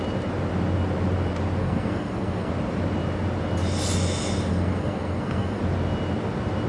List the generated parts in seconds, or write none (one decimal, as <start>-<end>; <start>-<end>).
1.6-2.5; 4.5-5.6

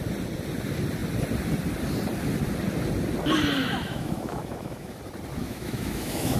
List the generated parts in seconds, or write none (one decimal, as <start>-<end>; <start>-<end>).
3.6-5.0; 5.4-6.4

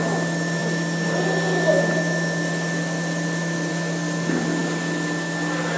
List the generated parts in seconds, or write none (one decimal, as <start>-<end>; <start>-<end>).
none

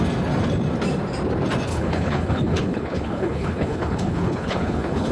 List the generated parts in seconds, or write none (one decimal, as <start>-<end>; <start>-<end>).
1.7-5.1